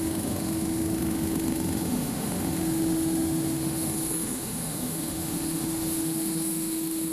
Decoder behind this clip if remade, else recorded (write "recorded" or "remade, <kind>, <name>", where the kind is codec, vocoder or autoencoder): remade, autoencoder, DAC-VAE